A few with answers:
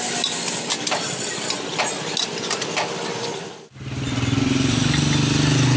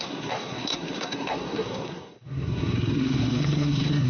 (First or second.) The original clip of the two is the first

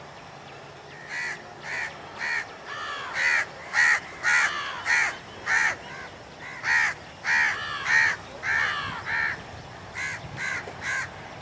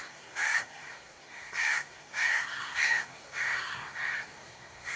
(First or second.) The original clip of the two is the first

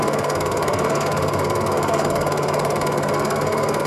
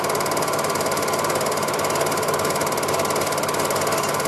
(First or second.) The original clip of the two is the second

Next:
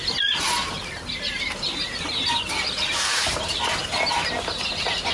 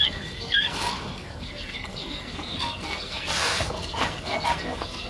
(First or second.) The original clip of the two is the first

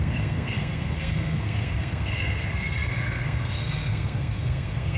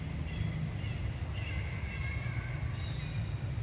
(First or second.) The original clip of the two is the second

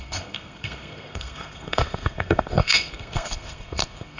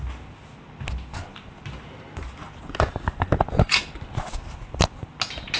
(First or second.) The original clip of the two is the second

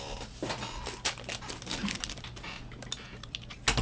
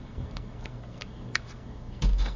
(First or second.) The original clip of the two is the first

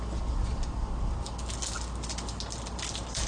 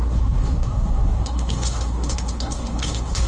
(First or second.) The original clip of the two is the first